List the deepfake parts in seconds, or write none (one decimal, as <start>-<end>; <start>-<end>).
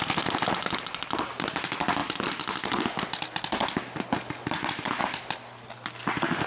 none